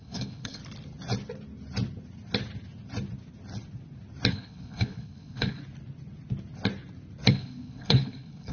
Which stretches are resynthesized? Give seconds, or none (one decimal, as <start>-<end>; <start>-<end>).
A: 0.0-0.6; 4.3-5.6; 7.3-8.5